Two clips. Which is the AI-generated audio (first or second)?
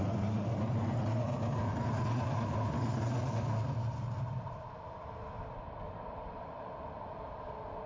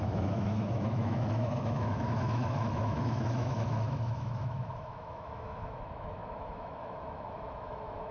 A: second